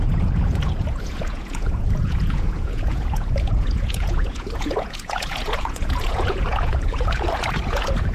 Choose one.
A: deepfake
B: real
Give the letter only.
A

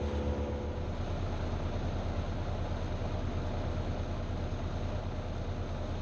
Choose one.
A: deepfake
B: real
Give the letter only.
B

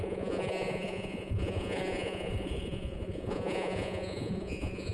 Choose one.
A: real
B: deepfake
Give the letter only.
B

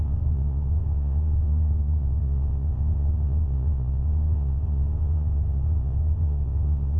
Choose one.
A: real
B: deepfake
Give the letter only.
B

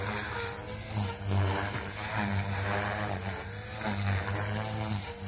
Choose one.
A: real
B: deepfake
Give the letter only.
A